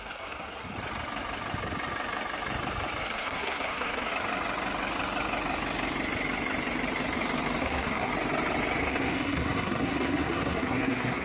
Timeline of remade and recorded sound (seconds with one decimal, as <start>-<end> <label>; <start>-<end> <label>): 0.0-0.7 remade; 0.7-3.0 recorded; 3.0-4.1 remade; 4.1-7.6 recorded; 7.6-8.1 remade; 8.1-8.8 recorded; 8.8-11.2 remade